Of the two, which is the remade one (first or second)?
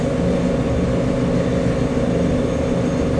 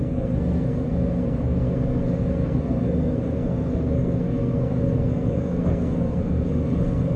second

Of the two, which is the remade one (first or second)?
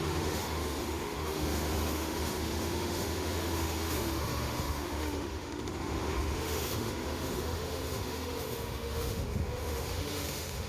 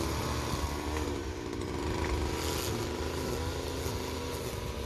first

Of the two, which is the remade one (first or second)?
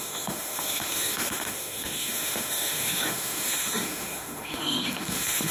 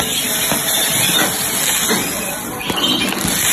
first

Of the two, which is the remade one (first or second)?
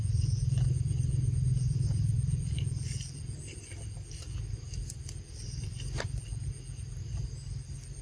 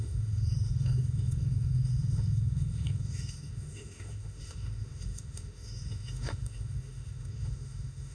second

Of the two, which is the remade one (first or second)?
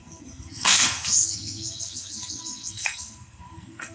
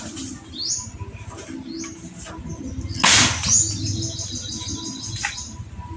first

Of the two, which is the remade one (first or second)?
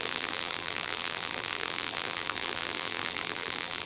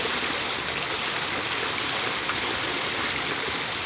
first